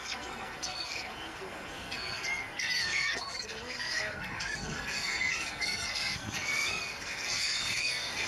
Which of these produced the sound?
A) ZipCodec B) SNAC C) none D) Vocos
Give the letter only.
B